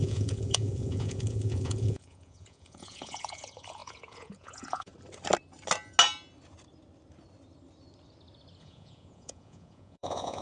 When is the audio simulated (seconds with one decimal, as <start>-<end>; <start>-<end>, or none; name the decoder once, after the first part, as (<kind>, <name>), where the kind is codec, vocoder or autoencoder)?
0.0-4.9 (vocoder, Vocos); 8.6-10.4